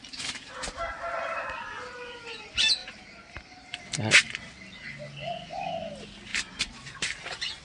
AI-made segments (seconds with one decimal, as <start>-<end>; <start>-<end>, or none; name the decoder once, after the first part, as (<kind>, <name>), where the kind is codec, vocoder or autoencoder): 2.8-3.8 (vocoder, BigVGAN v2); 6.3-7.6